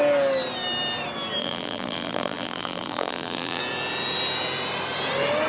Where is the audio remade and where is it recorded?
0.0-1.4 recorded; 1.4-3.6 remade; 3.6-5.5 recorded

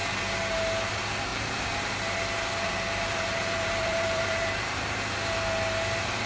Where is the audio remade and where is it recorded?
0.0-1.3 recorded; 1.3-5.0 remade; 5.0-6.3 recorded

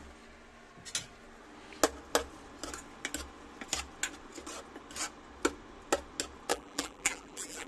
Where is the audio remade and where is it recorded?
0.0-6.5 recorded; 6.5-7.7 remade